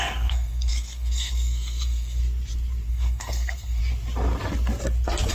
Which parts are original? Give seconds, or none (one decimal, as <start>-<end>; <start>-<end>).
2.2-2.9; 3.8-5.3